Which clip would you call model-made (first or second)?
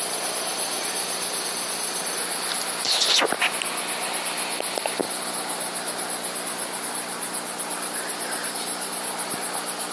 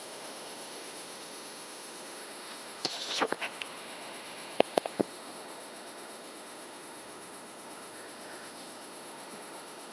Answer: second